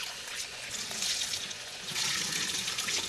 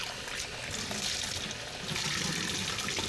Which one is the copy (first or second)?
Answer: first